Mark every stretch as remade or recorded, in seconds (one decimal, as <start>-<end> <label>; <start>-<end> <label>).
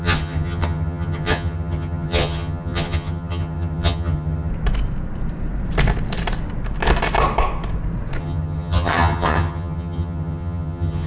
0.0-4.5 remade; 4.5-8.2 recorded; 8.2-11.1 remade